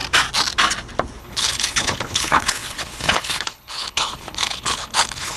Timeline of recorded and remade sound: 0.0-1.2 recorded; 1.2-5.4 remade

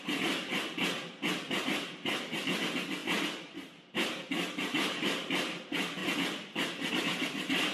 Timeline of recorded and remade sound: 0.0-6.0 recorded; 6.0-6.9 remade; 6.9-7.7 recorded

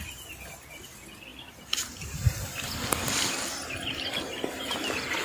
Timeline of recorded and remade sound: 0.0-5.2 recorded

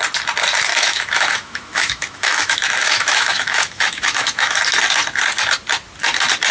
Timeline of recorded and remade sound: 0.0-0.7 recorded; 0.7-4.6 remade; 4.6-6.5 recorded

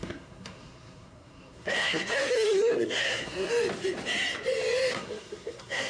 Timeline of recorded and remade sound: 0.0-3.5 remade; 3.5-4.9 recorded; 4.9-5.9 remade

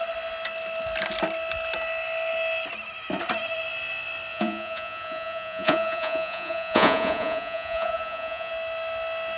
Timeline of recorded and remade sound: 0.0-4.3 recorded; 4.3-8.5 remade; 8.5-9.4 recorded

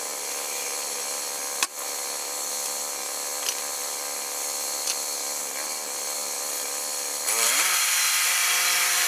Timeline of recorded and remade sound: 0.0-9.1 remade